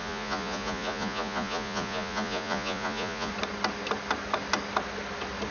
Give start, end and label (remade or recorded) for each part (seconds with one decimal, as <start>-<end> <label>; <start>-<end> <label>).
0.0-3.3 remade; 3.3-5.5 recorded